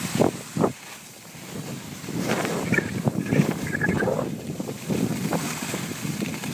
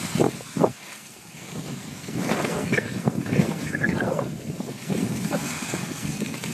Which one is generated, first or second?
second